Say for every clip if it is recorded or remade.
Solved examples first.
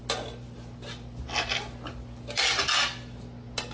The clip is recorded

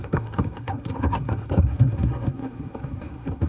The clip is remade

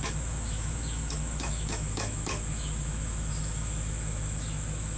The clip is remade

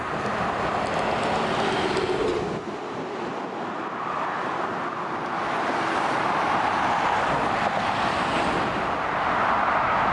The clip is recorded